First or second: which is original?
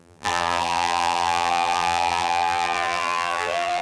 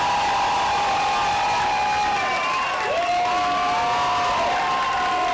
second